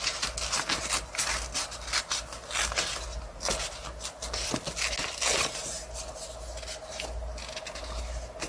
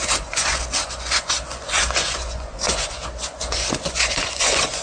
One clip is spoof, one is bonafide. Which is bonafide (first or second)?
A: first